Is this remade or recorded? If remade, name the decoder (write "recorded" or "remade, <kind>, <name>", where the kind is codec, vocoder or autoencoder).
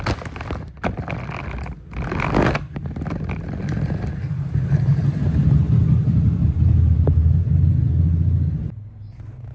recorded